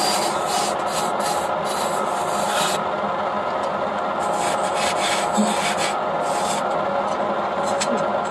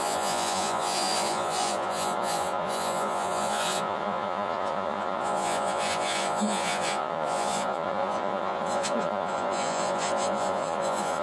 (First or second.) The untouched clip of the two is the first